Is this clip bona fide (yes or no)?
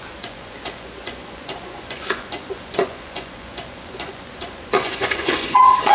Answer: no